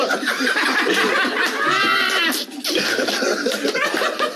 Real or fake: fake